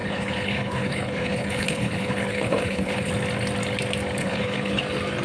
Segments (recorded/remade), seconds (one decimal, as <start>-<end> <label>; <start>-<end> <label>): 0.0-3.1 remade; 3.1-4.2 recorded; 4.2-4.8 remade; 4.8-5.2 recorded